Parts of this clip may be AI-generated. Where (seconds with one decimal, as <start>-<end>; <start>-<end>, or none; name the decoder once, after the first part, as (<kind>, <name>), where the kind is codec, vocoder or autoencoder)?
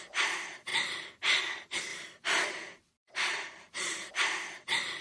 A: 1.9-4.1 (vocoder, BigVGAN v2)